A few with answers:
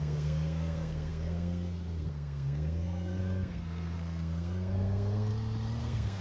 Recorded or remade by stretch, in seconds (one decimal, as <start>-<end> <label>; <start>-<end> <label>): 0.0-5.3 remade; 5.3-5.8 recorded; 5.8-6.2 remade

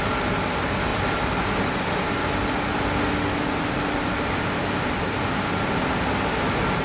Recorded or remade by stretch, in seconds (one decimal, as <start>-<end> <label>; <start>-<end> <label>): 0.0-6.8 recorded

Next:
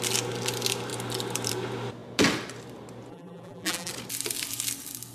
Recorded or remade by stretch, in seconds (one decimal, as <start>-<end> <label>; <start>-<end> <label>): 0.0-3.1 recorded; 3.1-3.9 remade; 3.9-5.1 recorded